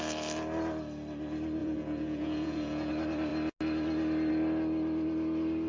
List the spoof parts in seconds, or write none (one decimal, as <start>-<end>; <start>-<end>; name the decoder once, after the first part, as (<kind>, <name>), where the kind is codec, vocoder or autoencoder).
1.6-2.9 (vocoder, Vocos)